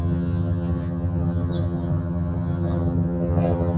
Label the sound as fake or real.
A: fake